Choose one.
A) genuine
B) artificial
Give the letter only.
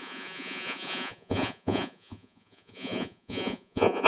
B